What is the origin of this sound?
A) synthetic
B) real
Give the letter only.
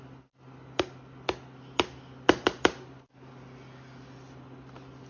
B